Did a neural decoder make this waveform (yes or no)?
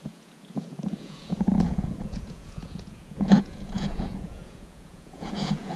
yes